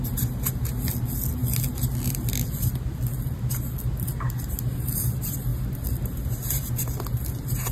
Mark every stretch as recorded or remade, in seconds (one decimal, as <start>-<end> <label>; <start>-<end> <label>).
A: 0.0-7.7 recorded